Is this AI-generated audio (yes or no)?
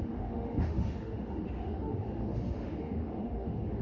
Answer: yes